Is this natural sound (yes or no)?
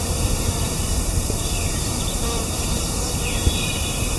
no